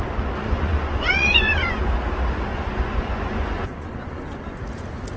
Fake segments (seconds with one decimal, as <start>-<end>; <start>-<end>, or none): 0.4-1.8; 2.5-4.6